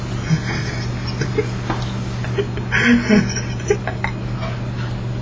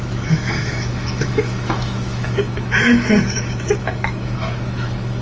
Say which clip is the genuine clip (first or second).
first